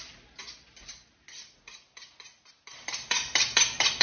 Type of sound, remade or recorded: recorded